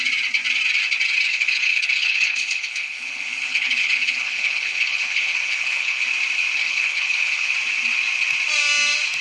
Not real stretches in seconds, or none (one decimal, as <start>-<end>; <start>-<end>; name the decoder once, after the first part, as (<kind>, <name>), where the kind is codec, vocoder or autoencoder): 1.3-6.0 (codec, HILCodec); 6.6-7.5